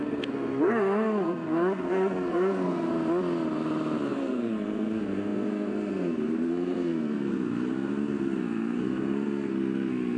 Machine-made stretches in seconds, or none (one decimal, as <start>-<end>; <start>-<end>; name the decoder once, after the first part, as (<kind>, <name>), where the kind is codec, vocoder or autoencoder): 0.0-2.9 (codec, SNAC); 4.1-10.2